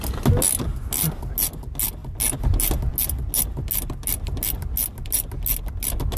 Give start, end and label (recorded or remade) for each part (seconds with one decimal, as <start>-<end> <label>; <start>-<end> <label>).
0.0-6.2 recorded

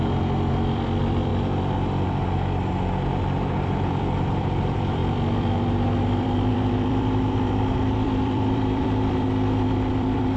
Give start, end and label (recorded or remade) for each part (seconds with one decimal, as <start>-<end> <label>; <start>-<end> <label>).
0.0-1.3 remade; 1.3-3.5 recorded; 3.5-10.4 remade

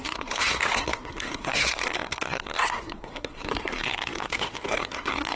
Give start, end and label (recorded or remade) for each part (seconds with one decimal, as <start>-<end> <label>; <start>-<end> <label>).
0.0-5.4 remade

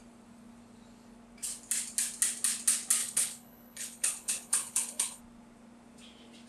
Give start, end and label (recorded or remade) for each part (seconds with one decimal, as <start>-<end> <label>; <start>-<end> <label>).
0.0-3.0 recorded; 3.0-5.2 remade; 5.2-6.5 recorded

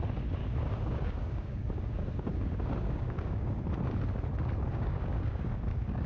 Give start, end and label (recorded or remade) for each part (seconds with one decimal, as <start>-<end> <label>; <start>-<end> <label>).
0.0-0.4 recorded; 0.4-3.6 remade; 3.6-4.7 recorded; 4.7-6.1 remade

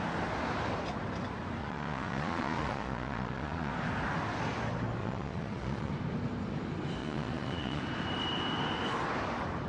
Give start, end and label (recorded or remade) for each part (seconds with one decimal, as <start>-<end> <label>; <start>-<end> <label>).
0.0-1.6 recorded; 1.6-3.7 remade; 3.7-5.0 recorded; 5.0-5.9 remade; 5.9-7.0 recorded; 7.0-7.8 remade; 7.8-9.7 recorded